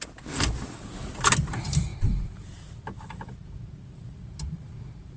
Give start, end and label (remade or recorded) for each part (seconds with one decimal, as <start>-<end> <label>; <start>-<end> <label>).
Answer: 0.0-5.2 recorded